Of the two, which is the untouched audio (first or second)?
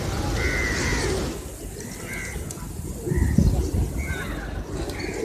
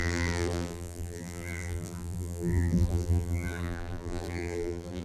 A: first